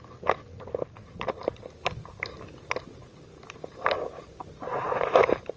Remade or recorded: recorded